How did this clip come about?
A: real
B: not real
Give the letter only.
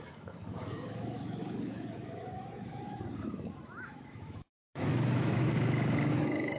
B